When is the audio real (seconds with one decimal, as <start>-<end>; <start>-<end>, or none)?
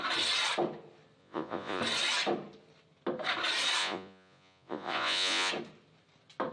0.0-1.2; 1.8-3.8; 5.5-6.5